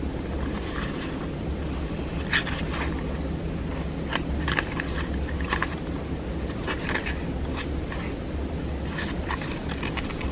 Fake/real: real